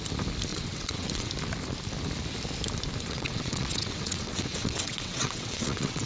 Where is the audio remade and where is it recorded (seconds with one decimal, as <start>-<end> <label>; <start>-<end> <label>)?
0.0-0.5 recorded; 0.5-1.3 remade; 1.3-3.0 recorded; 3.0-6.1 remade